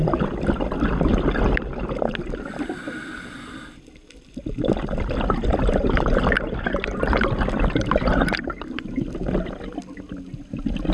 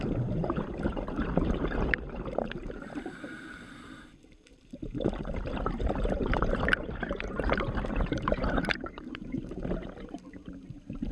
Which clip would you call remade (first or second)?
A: second